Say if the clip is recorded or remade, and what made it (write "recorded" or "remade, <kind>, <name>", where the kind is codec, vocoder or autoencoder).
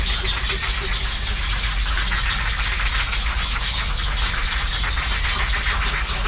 recorded